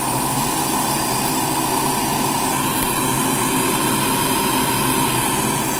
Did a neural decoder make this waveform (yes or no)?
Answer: no